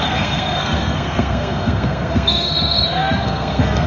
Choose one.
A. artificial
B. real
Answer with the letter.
A